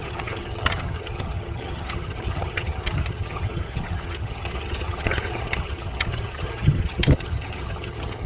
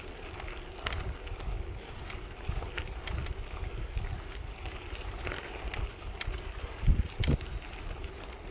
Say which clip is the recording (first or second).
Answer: second